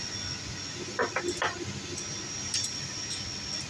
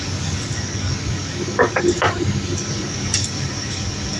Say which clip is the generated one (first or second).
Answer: second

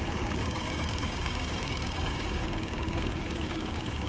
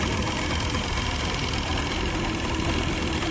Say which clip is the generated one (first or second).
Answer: first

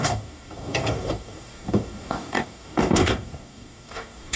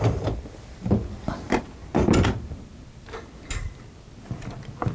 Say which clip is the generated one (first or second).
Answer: first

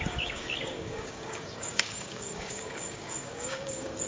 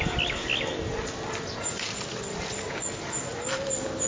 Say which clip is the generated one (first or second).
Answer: first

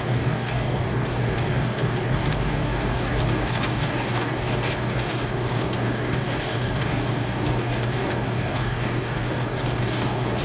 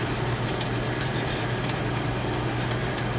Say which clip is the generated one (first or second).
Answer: first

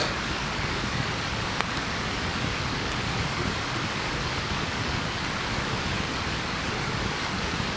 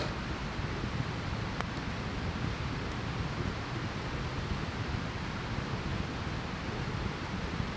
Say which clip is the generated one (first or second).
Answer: first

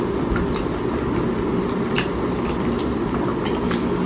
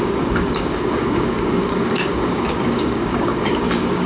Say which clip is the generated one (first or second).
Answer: second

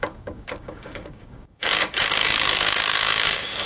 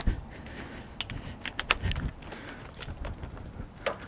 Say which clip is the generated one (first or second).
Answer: first